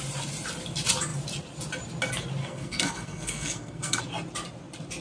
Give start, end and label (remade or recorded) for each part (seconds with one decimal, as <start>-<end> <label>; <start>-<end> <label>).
0.0-2.4 recorded; 2.4-4.0 remade; 4.0-5.0 recorded